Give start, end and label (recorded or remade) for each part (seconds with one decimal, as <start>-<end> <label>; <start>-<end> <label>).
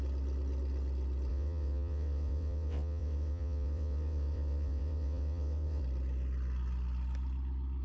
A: 0.0-1.3 recorded; 1.3-5.8 remade; 5.8-7.8 recorded